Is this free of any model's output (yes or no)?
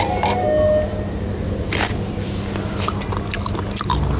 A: yes